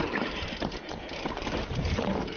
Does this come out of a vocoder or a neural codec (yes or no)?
yes